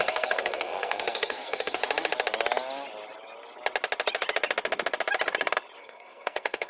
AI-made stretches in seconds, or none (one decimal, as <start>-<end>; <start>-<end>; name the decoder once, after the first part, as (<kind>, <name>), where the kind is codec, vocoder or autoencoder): 0.0-1.8 (codec, SNAC); 5.8-6.7